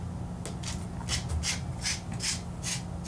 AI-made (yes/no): no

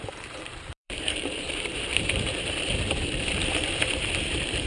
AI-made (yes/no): yes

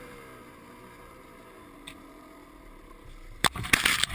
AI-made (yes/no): yes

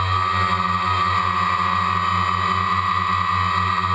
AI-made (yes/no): no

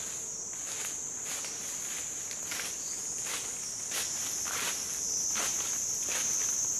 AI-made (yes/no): no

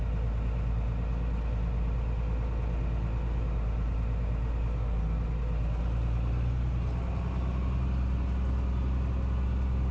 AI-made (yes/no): no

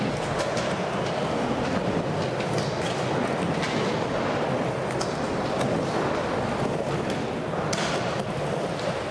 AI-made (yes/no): no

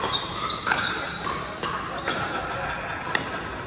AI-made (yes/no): no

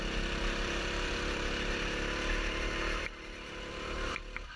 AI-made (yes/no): yes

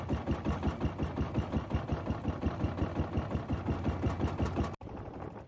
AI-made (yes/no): no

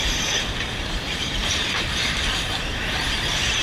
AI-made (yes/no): yes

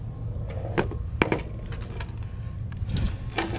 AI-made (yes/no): no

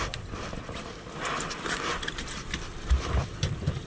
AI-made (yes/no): yes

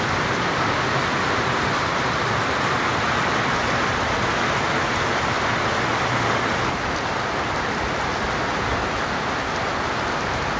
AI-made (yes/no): no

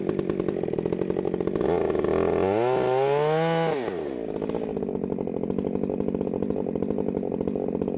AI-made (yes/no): no